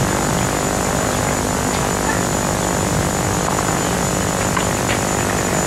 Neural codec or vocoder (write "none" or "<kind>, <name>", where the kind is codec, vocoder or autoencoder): none